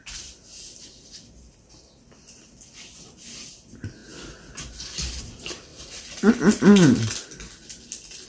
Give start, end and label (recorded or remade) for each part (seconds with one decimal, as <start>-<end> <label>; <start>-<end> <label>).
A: 0.0-8.3 recorded